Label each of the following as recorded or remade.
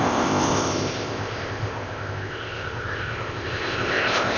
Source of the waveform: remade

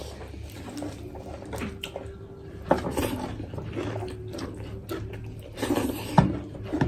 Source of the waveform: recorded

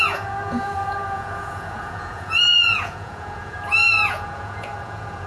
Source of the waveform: remade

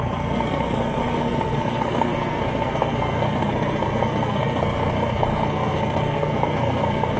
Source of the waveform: remade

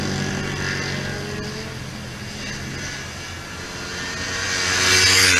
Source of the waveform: recorded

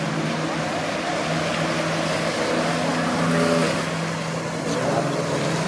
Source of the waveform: recorded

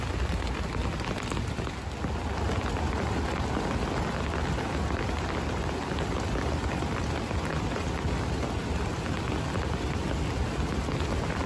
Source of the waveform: recorded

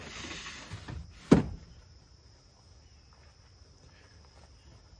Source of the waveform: recorded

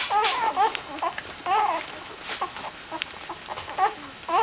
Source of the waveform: recorded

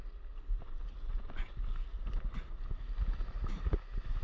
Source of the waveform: recorded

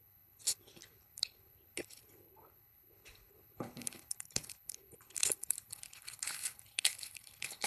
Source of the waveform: remade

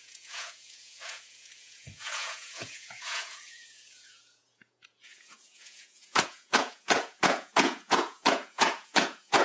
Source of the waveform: remade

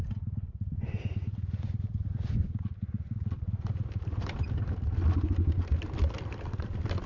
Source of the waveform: remade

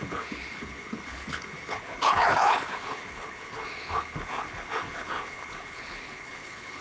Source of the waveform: remade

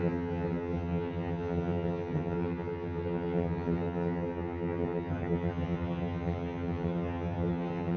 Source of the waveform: remade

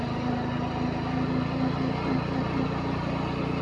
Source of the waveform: recorded